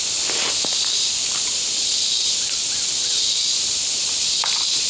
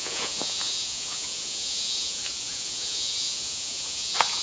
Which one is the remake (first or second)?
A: second